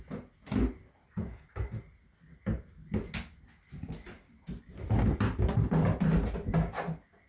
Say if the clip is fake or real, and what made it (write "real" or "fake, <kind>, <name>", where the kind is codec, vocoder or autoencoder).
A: real